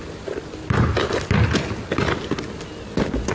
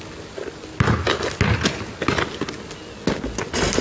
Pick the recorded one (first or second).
second